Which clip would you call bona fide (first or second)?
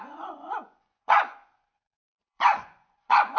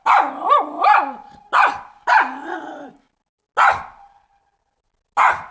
second